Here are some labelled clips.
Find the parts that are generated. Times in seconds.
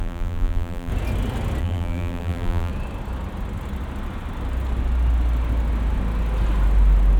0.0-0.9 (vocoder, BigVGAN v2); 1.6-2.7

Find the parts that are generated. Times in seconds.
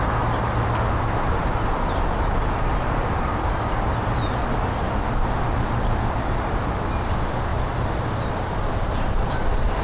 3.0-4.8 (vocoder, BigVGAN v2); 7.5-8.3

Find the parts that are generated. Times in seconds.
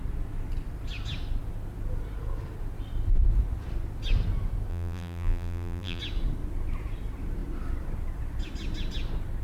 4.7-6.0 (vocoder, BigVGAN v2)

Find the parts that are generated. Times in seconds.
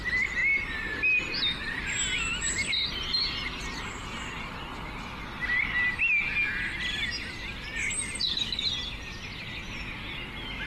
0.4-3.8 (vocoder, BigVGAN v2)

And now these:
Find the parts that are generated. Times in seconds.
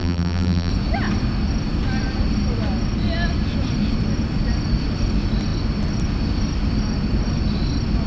0.0-0.7 (vocoder, BigVGAN v2)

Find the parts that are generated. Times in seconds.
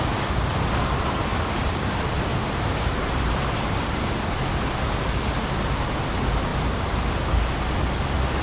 1.3-1.9 (vocoder, BigVGAN v2); 2.3-4.3; 6.5-7.9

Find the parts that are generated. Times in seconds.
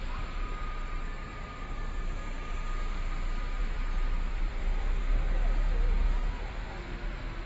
3.6-5.0 (vocoder, BigVGAN v2); 6.2-6.7